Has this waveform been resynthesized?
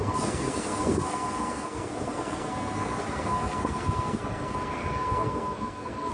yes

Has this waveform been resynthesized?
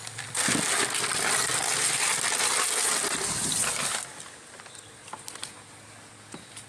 no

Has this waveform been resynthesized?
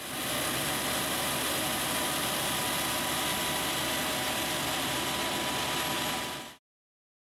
no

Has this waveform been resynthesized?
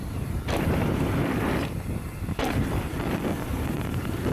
no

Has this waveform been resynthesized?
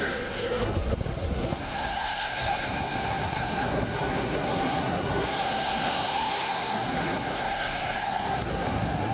yes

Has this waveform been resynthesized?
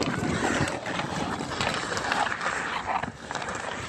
no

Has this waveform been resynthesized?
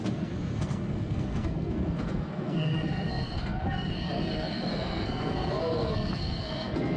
yes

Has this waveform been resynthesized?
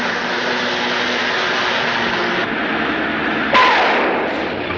no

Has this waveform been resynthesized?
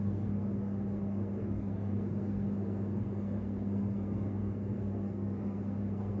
yes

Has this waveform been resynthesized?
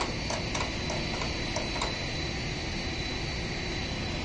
no